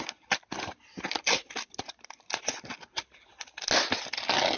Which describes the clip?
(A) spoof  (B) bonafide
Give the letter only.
B